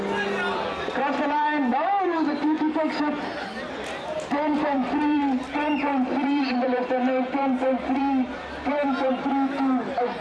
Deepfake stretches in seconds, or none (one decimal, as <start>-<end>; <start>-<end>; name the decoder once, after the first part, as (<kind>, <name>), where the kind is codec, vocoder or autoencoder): 1.7-5.2 (vocoder, BigVGAN v2); 6.2-9.1